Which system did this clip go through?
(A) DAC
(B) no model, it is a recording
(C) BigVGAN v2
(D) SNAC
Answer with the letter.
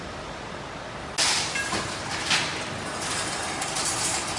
B